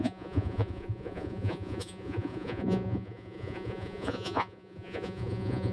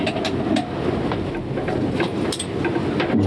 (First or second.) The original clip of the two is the second